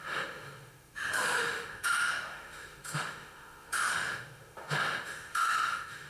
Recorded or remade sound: remade